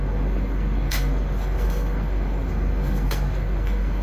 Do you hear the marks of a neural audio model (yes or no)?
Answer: yes